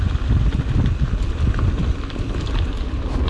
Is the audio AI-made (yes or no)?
no